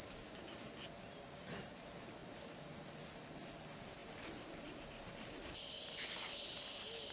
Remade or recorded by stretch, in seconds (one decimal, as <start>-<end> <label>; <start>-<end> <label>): 0.0-7.1 recorded